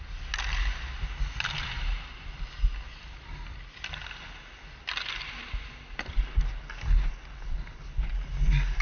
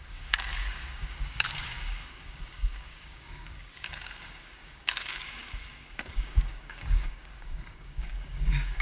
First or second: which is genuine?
first